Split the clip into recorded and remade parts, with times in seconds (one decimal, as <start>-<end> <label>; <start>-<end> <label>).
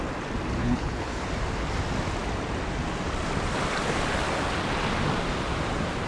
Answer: 0.0-0.6 recorded; 0.6-1.2 remade; 1.2-6.1 recorded